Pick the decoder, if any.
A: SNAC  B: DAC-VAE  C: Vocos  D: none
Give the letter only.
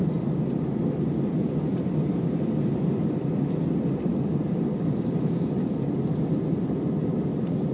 D